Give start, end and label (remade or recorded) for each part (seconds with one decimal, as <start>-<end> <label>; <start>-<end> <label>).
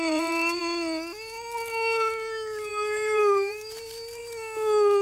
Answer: 0.0-0.6 remade; 0.6-2.7 recorded; 2.7-4.2 remade; 4.2-5.0 recorded